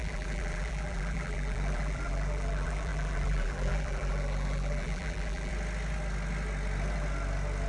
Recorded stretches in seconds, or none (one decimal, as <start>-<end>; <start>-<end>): 5.5-7.7